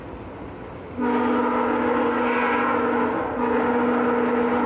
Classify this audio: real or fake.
real